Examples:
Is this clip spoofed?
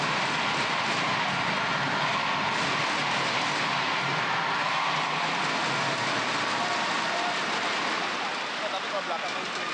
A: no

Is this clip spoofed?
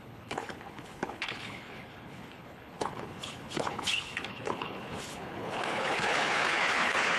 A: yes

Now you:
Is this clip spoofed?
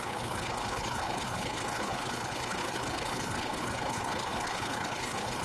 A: yes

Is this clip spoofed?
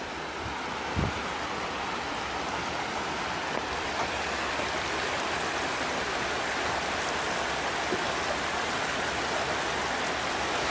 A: no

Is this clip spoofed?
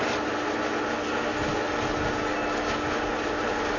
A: no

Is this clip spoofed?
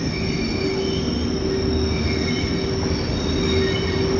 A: no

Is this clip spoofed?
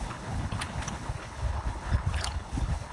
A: yes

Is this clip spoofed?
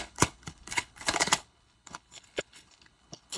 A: yes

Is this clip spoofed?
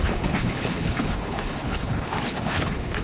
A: yes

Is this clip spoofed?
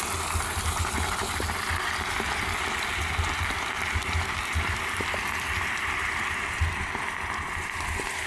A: no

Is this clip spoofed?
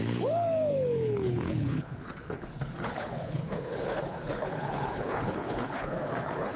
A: yes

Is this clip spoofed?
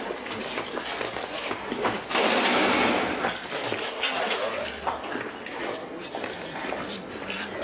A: no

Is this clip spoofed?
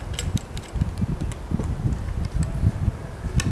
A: no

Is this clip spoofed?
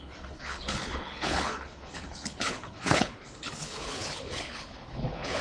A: yes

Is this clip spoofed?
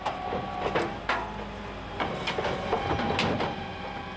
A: no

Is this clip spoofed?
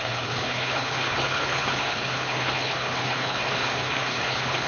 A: yes